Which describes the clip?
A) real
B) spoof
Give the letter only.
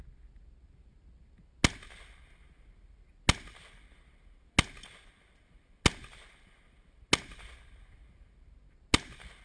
A